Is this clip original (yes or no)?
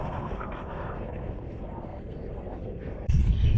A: no